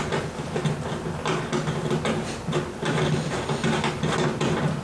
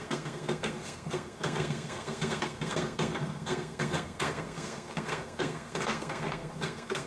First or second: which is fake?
second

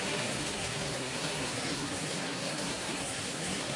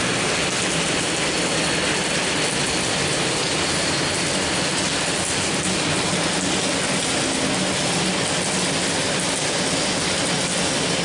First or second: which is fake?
first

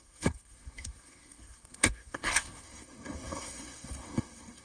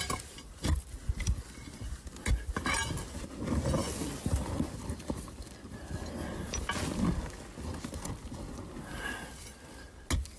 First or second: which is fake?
first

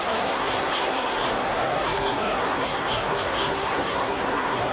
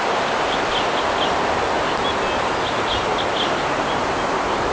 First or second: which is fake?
first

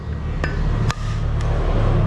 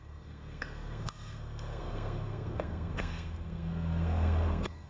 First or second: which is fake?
second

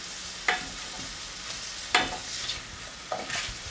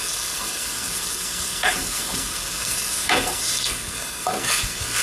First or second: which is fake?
second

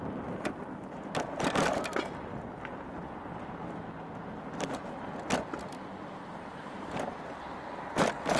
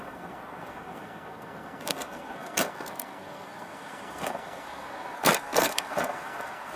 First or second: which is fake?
second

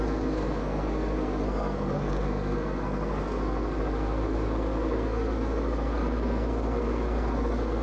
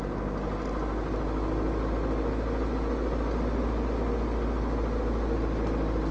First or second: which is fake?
first